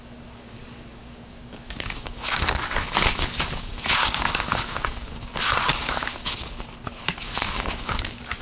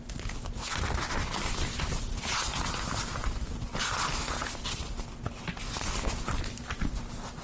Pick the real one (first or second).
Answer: second